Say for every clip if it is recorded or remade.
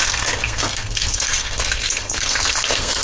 remade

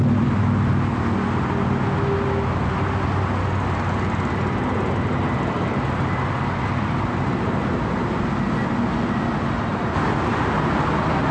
recorded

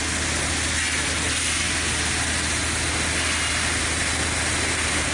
recorded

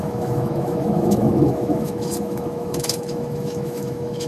remade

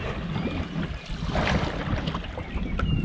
recorded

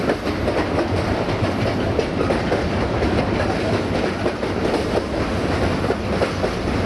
recorded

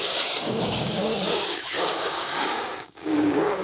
remade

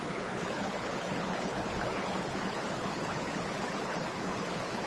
remade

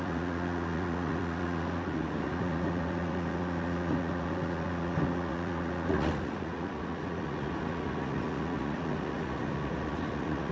remade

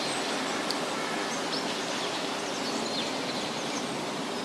recorded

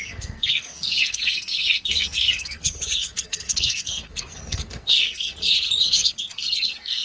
remade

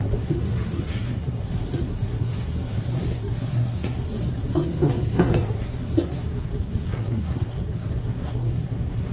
remade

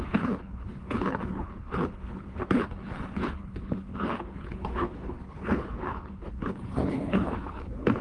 remade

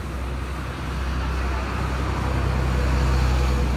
recorded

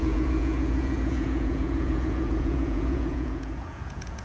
remade